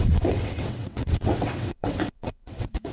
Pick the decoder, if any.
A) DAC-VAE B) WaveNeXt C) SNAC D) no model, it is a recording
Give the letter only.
B